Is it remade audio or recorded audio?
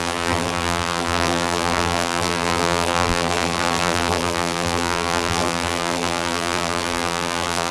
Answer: remade